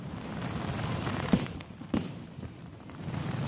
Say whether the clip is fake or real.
fake